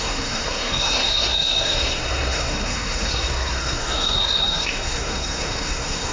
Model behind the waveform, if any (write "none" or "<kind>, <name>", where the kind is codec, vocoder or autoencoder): codec, SNAC